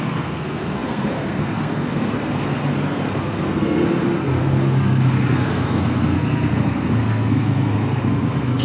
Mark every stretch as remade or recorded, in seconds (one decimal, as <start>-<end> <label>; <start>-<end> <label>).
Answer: 0.0-8.6 remade